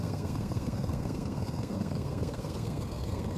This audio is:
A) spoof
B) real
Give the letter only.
A